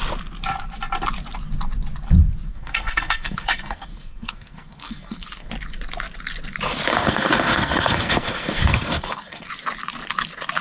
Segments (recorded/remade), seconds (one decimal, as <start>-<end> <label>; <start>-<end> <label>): 0.0-2.5 recorded; 2.5-5.5 remade; 5.5-6.9 recorded; 6.9-9.5 remade; 9.5-10.6 recorded